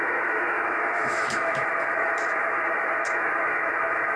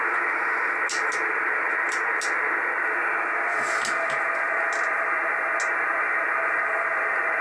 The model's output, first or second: first